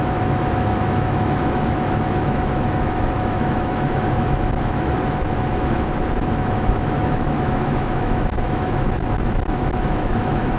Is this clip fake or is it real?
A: fake